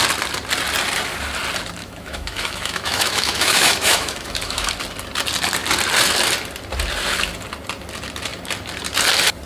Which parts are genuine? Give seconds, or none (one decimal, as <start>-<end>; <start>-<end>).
0.0-1.8; 4.7-9.5